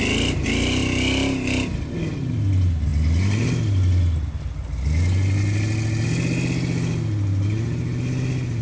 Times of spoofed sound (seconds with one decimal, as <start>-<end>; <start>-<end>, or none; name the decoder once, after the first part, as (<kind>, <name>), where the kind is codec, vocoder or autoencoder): none